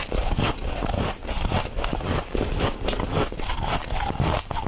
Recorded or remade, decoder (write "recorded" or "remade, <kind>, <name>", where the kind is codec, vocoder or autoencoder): recorded